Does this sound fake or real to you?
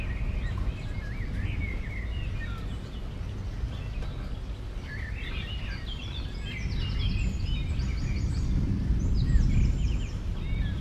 real